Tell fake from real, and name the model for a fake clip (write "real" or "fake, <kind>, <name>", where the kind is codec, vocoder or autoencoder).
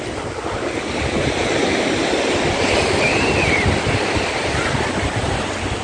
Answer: fake, vocoder, BigVGAN v2